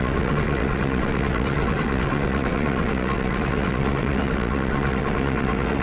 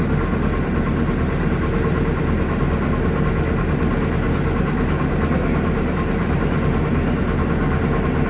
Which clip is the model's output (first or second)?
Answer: first